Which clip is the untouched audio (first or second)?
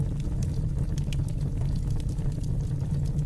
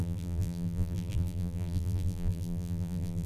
first